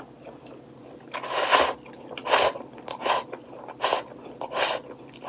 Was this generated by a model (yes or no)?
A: no